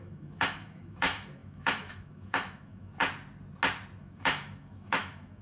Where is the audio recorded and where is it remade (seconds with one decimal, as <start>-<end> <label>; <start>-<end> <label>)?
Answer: 0.0-3.0 remade; 3.0-4.0 recorded; 4.0-5.4 remade

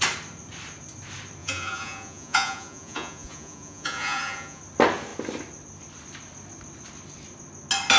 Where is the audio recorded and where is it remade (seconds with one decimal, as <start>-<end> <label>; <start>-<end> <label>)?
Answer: 0.0-1.4 recorded; 1.4-4.6 remade; 4.6-8.0 recorded

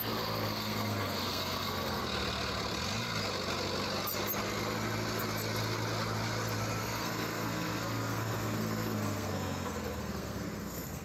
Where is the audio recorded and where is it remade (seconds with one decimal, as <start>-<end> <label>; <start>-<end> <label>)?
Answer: 0.0-2.0 remade; 2.0-6.8 recorded; 6.8-11.0 remade